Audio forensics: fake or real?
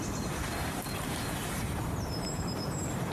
fake